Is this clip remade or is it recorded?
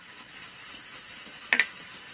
recorded